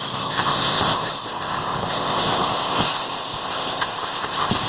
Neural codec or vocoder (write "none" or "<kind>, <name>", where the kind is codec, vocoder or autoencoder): codec, ZipCodec